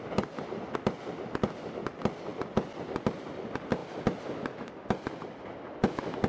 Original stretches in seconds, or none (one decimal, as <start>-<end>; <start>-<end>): 0.0-6.3